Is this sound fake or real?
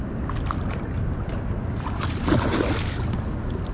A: real